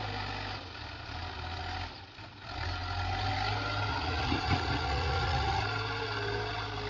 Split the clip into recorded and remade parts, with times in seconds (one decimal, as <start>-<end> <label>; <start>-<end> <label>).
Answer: 0.0-3.9 recorded; 3.9-5.6 remade; 5.6-6.9 recorded